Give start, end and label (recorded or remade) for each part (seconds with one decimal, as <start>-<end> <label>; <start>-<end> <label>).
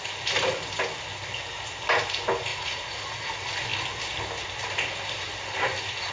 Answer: 0.0-2.5 recorded; 2.5-3.3 remade; 3.3-6.1 recorded